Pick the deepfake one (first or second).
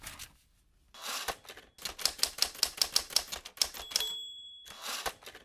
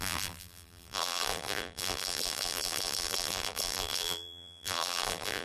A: second